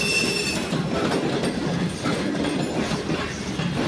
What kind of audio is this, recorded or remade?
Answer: recorded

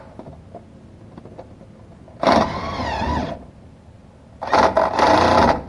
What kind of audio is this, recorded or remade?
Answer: recorded